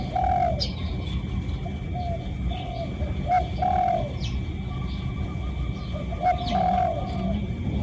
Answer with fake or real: real